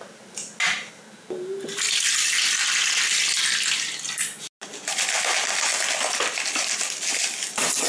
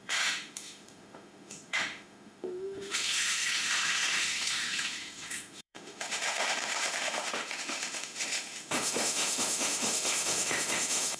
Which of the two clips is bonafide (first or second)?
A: first